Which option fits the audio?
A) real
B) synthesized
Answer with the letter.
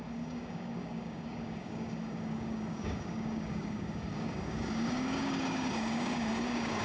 B